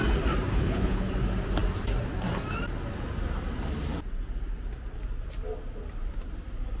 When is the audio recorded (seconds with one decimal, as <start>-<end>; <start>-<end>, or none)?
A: 0.0-0.5; 1.1-6.8